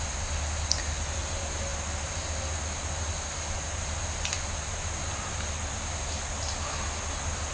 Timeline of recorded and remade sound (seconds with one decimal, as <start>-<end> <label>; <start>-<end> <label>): 0.0-7.5 recorded

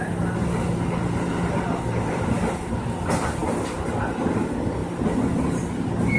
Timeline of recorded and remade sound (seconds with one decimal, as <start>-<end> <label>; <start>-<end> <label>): 0.0-6.2 recorded

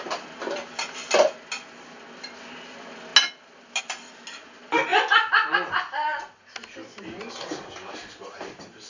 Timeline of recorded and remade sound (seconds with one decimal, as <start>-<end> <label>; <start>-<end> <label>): 0.0-8.9 recorded

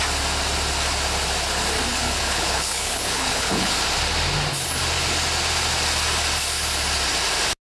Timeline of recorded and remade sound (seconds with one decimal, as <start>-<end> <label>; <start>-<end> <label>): 0.0-1.9 recorded; 1.9-3.7 remade; 3.7-7.7 recorded

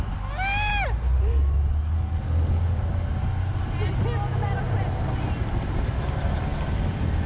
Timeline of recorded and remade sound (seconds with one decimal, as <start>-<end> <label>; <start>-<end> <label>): 0.0-7.3 recorded

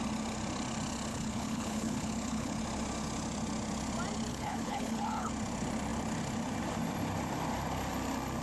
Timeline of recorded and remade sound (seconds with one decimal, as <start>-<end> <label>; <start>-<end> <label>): 0.0-1.1 recorded; 1.1-2.6 remade; 2.6-4.3 recorded; 4.3-5.3 remade; 5.3-8.4 recorded

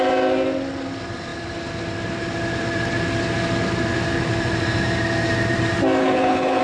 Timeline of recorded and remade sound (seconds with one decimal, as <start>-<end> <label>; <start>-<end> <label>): 0.0-6.0 recorded; 6.0-6.6 remade

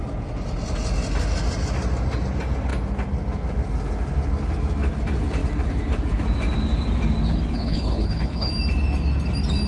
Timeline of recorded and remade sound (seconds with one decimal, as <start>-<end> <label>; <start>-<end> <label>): 0.0-7.5 recorded; 7.5-8.5 remade; 8.5-9.7 recorded